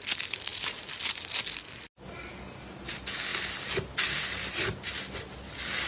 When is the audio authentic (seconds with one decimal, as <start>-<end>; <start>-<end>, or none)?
0.0-5.9

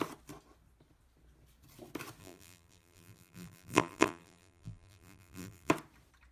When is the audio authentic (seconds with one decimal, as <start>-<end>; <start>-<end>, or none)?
0.0-2.2; 5.7-6.3

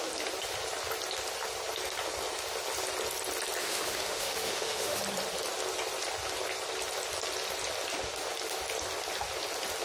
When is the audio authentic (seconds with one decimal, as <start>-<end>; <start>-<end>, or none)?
0.0-3.6; 5.0-9.8

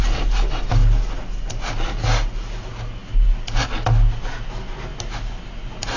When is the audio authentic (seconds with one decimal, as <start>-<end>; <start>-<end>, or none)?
0.0-6.0